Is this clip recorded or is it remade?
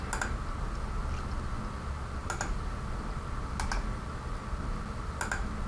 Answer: recorded